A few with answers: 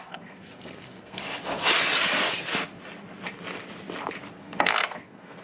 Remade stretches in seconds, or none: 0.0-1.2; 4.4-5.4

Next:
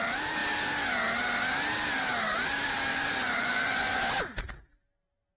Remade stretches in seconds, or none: 2.9-4.0